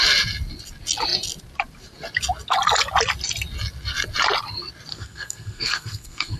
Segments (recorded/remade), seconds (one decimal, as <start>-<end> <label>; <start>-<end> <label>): 0.0-4.9 recorded; 4.9-6.4 remade